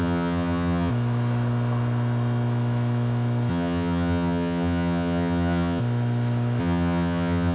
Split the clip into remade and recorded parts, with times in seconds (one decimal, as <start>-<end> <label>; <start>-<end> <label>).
0.0-0.9 remade; 0.9-3.5 recorded; 3.5-5.8 remade; 5.8-6.6 recorded; 6.6-7.5 remade